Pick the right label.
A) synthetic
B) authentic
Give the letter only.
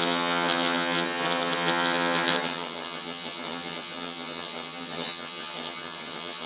A